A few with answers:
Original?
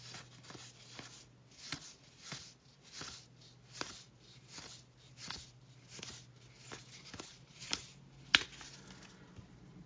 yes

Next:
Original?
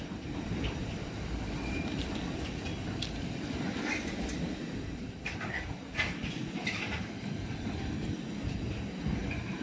yes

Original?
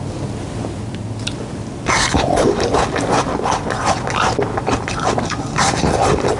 yes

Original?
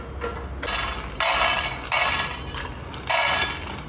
yes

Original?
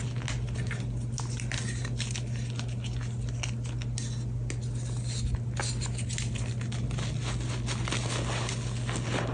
yes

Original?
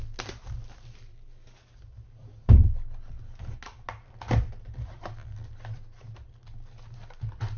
yes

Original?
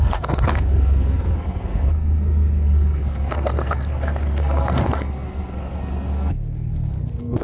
no